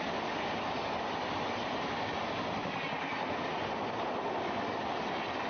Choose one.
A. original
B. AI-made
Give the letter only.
A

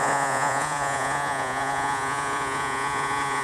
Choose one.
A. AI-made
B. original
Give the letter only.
A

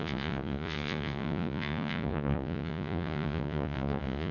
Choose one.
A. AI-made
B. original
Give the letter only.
A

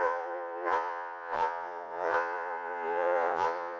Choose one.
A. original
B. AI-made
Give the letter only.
B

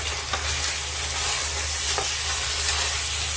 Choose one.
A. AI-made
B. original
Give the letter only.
B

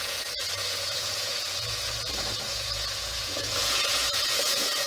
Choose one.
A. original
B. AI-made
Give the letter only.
B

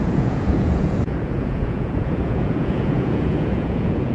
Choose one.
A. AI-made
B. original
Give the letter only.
A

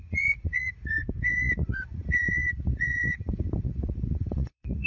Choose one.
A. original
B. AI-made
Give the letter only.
B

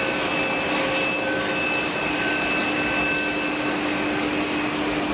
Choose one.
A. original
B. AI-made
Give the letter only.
A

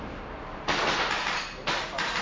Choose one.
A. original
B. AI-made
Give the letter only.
A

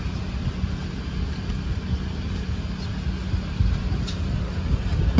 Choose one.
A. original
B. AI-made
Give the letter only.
A